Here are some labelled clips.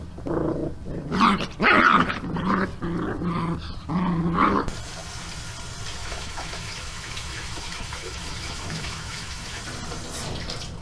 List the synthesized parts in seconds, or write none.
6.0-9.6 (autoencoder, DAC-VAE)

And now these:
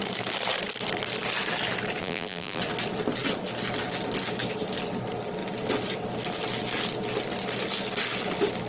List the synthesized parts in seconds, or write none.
2.0-2.6 (vocoder, BigVGAN v2)

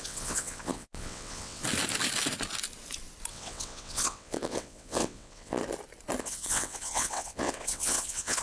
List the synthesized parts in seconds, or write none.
0.0-1.6 (vocoder, WaveNeXt); 3.3-5.6; 6.2-8.4

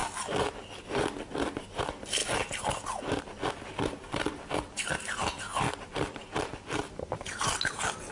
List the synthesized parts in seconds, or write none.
none

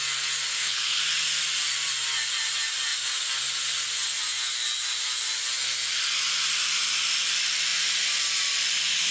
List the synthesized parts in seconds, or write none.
0.5-1.0 (codec, HILCodec)